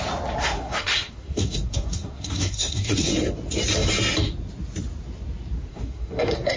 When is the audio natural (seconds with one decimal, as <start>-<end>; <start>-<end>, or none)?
0.0-0.4; 3.1-5.7